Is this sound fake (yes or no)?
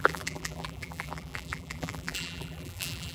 yes